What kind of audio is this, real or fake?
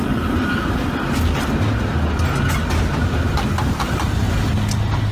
real